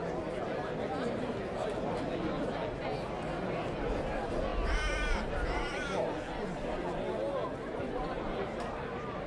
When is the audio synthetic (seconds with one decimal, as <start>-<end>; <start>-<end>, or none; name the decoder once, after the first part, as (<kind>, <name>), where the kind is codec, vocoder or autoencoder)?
none